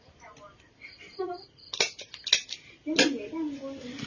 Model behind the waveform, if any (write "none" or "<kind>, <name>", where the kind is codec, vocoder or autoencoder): none